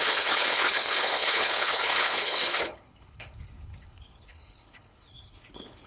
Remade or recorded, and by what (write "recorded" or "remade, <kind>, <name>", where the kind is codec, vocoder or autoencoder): remade, codec, HILCodec